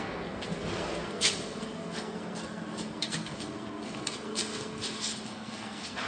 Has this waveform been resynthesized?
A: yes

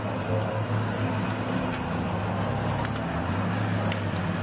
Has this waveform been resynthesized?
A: no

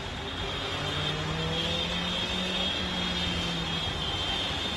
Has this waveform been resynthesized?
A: no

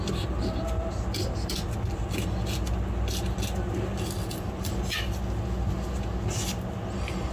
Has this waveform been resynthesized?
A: no